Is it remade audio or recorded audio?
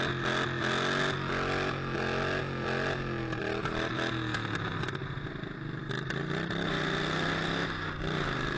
recorded